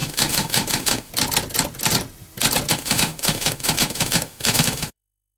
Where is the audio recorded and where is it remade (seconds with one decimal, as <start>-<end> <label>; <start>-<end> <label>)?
0.0-1.1 remade; 1.1-2.7 recorded; 2.7-5.4 remade